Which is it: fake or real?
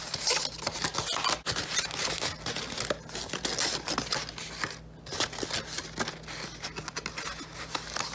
real